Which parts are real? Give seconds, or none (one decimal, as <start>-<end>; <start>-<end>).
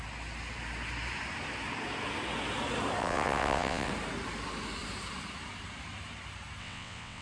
0.0-3.0; 3.9-6.6